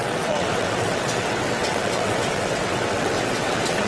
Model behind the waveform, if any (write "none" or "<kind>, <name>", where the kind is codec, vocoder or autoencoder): vocoder, WaveNeXt